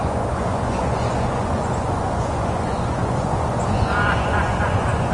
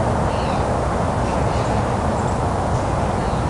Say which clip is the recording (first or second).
second